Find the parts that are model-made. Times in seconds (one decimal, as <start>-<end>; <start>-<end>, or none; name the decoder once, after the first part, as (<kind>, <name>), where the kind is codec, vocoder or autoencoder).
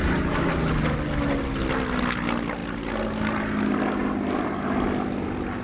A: 0.0-0.5 (vocoder, BigVGAN v2)